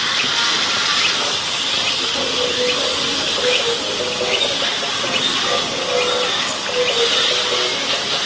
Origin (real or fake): real